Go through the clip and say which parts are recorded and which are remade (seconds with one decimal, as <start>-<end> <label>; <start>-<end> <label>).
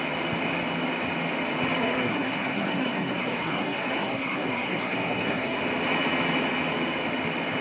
0.0-1.8 recorded; 1.8-5.6 remade; 5.6-7.6 recorded